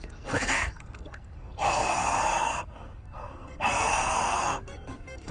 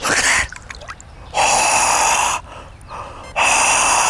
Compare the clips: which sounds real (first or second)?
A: second